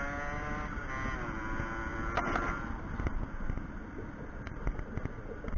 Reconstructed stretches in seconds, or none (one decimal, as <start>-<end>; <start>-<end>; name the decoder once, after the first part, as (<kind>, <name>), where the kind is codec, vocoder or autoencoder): 1.9-5.6 (vocoder, BigVGAN v2)